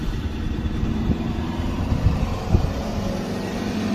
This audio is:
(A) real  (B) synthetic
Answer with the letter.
B